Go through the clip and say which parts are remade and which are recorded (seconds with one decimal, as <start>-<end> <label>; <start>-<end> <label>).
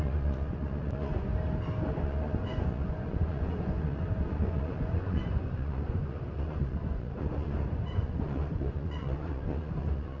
0.0-1.3 remade; 1.3-1.9 recorded; 1.9-10.2 remade